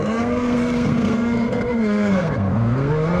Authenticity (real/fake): fake